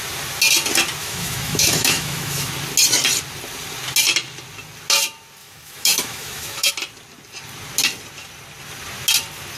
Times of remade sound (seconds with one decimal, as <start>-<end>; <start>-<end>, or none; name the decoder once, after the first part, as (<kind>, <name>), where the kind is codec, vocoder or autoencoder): 1.0-2.5 (autoencoder, DAC-VAE); 5.4-6.7